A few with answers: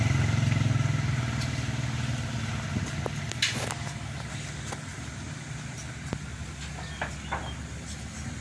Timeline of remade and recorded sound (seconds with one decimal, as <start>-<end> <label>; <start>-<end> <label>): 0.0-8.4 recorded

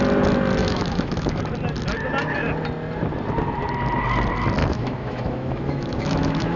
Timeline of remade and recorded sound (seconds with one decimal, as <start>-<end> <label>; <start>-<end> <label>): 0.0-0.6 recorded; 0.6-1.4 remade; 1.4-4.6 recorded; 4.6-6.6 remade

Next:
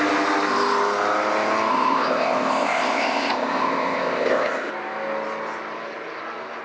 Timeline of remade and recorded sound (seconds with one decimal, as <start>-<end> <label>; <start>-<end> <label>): 0.0-1.7 recorded; 1.7-4.7 remade; 4.7-6.6 recorded